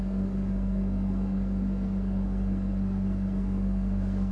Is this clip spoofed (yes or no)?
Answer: yes